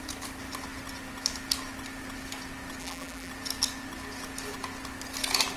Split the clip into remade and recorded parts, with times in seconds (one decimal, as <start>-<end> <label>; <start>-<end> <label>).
0.0-2.8 recorded; 2.8-3.3 remade; 3.3-5.6 recorded